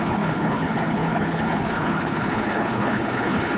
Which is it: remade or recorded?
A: remade